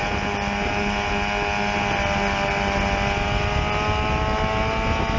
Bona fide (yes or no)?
yes